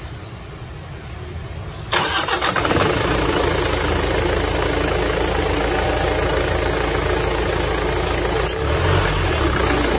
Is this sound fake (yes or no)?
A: no